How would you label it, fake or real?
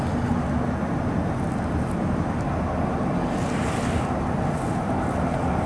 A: real